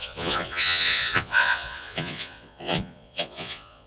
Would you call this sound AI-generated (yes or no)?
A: yes